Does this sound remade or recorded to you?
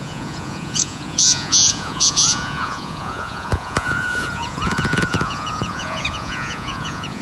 remade